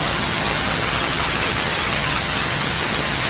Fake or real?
fake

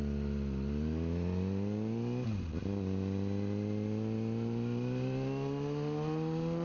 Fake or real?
real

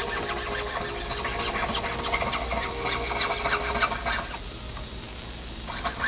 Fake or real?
real